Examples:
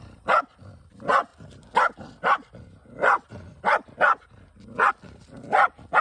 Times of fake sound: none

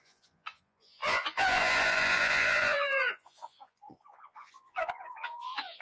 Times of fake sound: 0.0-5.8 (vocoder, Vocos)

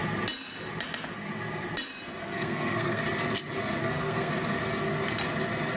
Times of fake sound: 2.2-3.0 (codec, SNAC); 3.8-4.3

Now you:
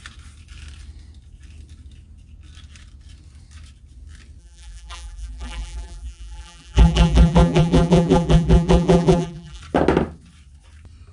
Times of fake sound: 4.4-9.6 (vocoder, BigVGAN v2)